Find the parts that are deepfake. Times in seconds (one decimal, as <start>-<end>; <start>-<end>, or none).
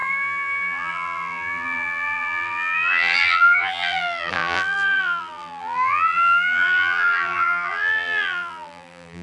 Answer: 0.0-9.2